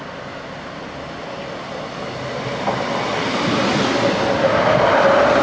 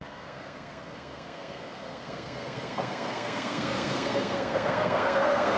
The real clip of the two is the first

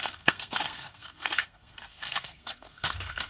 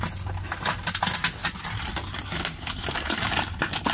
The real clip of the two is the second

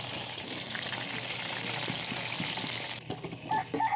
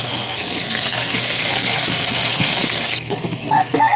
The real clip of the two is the first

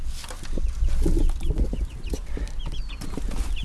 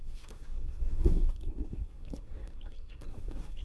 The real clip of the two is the first